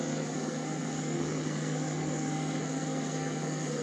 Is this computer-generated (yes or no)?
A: yes